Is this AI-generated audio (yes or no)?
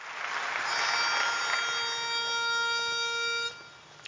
no